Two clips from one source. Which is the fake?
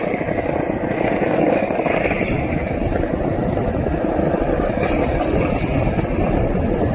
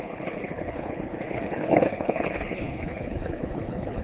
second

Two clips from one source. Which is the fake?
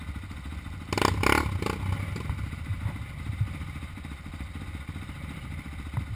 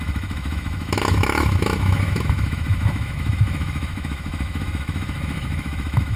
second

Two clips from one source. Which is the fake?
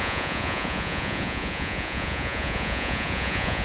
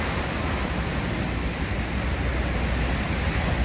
first